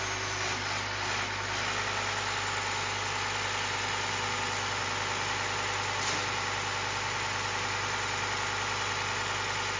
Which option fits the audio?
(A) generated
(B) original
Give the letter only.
B